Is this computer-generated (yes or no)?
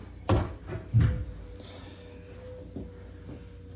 no